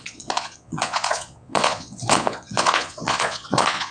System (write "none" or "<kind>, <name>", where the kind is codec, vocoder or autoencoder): vocoder, Vocos